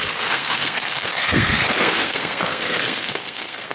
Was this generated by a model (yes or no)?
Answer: yes